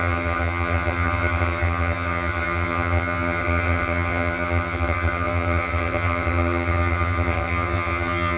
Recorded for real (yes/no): no